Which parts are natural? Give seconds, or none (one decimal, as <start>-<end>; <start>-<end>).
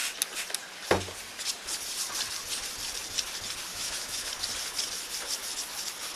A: 0.0-3.7; 4.3-6.2